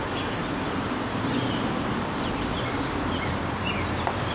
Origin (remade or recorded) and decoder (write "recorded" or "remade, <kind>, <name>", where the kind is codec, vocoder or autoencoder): remade, vocoder, BigVGAN v2